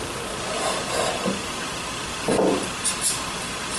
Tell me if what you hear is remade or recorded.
recorded